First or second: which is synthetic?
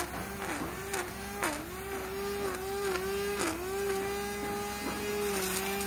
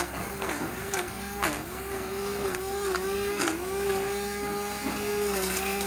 second